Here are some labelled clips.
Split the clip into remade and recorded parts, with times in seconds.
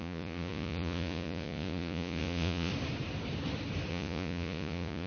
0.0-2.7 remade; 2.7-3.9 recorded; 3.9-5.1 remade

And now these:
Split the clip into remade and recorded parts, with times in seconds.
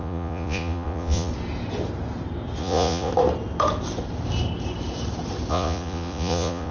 0.0-1.3 remade; 1.3-2.6 recorded; 2.6-3.1 remade; 3.1-5.5 recorded; 5.5-6.7 remade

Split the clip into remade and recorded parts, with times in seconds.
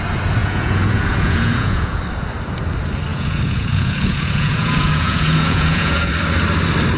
0.0-0.4 recorded; 0.4-2.0 remade; 2.0-3.1 recorded; 3.1-6.1 remade; 6.1-7.0 recorded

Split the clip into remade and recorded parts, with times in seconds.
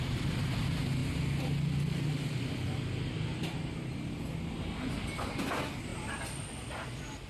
0.0-7.3 recorded